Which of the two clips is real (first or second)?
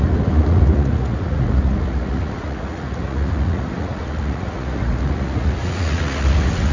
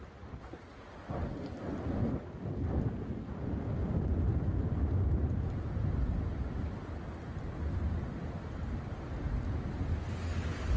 second